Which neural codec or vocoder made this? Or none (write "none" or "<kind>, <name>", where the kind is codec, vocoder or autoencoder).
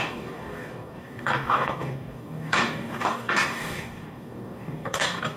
codec, DAC